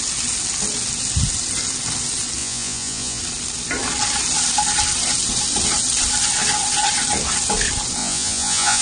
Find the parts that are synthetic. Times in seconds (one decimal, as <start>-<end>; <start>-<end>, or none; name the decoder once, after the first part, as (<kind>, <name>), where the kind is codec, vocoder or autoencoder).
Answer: 2.4-3.2 (vocoder, Vocos); 8.0-8.8